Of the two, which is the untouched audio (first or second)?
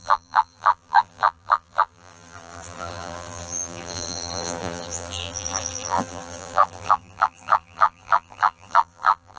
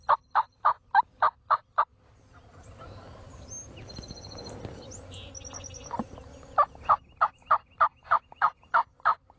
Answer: second